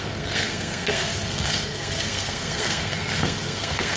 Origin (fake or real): fake